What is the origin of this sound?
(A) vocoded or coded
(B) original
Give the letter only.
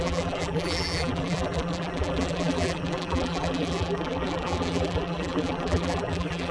A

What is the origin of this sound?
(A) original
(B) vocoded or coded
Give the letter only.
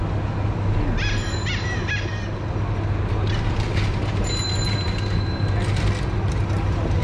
A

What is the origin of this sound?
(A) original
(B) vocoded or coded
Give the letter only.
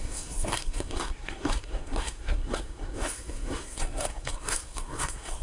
B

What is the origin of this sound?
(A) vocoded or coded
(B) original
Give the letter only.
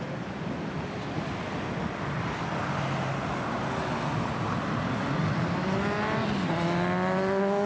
B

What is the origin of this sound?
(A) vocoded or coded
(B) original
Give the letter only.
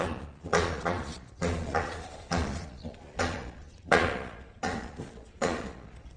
A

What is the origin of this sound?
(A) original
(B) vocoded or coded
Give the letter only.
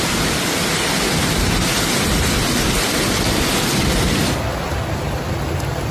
A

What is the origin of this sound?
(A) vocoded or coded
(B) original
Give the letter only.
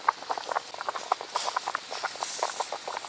B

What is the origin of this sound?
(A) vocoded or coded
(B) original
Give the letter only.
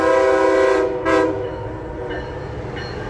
B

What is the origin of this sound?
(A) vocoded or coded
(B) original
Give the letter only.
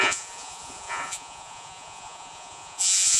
A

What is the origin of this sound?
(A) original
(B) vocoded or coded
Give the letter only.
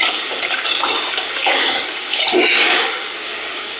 B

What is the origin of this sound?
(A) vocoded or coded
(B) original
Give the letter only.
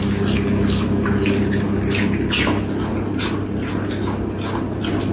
B